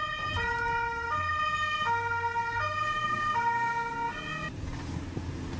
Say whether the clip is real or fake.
real